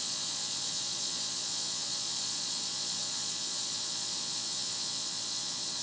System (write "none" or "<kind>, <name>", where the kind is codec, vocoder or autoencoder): vocoder, Vocos